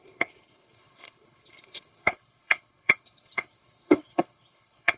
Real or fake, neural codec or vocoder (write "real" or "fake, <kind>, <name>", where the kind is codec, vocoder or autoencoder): fake, codec, HILCodec